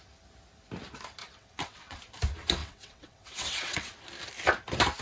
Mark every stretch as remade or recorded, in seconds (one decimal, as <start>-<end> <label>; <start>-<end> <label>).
0.0-1.2 recorded; 1.2-2.0 remade; 2.0-2.6 recorded; 2.6-3.9 remade; 3.9-5.0 recorded